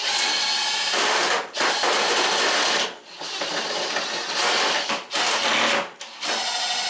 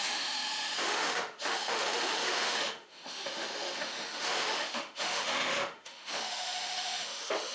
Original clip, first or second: first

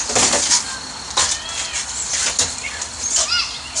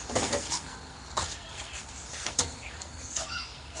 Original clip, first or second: first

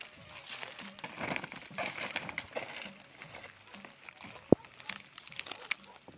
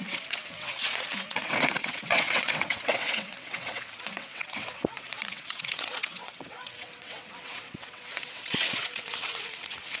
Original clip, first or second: first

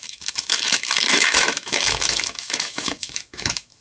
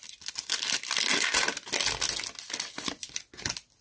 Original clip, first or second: second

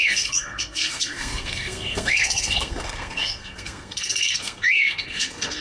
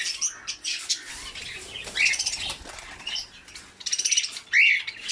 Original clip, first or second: second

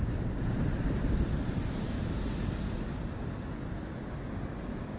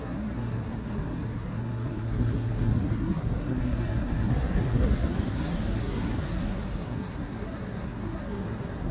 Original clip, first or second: first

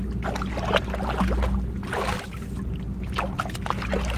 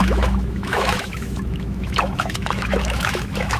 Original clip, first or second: first